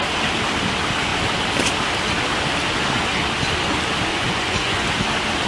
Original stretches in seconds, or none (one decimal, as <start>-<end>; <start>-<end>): 0.0-4.1; 4.9-5.5